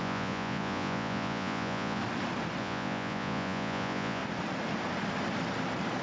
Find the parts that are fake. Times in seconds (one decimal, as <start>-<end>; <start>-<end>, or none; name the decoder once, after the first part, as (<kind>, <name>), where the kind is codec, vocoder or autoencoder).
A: 0.0-2.0 (vocoder, Vocos); 2.6-4.2